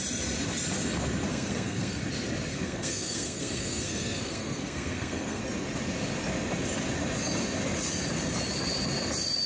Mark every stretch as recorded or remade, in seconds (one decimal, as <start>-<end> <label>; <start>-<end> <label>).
0.0-1.3 recorded; 1.3-2.0 remade; 2.0-2.5 recorded; 2.5-5.4 remade; 5.4-9.5 recorded